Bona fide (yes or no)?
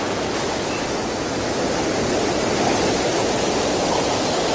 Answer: yes